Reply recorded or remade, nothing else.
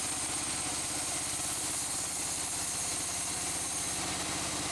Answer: recorded